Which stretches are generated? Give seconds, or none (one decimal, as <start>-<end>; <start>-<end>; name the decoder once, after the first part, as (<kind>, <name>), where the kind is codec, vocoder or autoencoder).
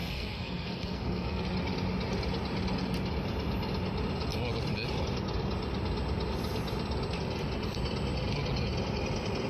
0.0-1.4 (codec, SNAC)